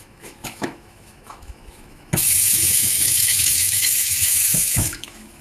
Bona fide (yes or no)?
no